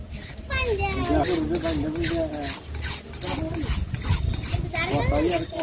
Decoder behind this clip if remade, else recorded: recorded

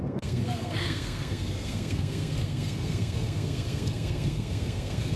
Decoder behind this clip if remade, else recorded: remade, codec, SNAC